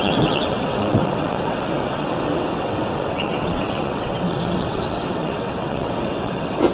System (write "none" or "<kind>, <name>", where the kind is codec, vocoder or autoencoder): vocoder, WaveNeXt